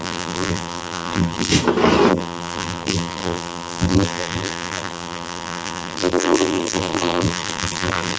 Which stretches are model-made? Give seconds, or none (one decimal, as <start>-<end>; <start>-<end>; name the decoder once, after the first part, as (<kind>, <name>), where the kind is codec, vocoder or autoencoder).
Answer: 0.0-1.5 (vocoder, BigVGAN v2); 2.1-8.2